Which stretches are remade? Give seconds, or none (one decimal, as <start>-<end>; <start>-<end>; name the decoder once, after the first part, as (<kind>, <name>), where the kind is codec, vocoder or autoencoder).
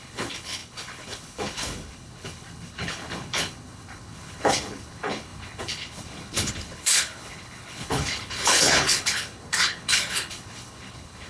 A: 0.0-11.3 (codec, HILCodec)